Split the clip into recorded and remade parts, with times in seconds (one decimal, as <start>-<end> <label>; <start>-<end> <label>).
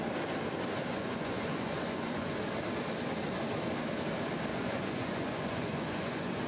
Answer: 0.0-0.9 recorded; 0.9-2.4 remade; 2.4-4.5 recorded; 4.5-6.5 remade